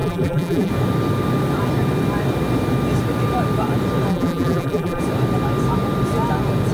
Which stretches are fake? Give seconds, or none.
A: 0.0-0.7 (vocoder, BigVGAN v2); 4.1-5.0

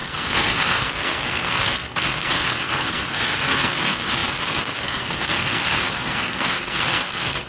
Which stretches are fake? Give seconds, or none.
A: 0.0-7.5 (codec, SNAC)